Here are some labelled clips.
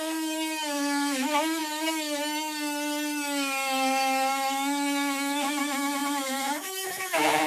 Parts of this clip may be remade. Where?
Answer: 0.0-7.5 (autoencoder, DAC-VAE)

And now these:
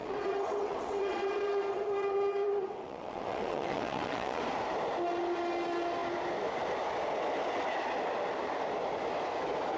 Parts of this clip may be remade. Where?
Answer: 0.0-4.4 (vocoder, WaveNeXt)

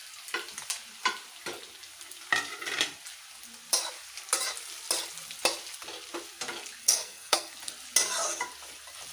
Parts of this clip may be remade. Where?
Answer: 6.8-7.5 (codec, SNAC)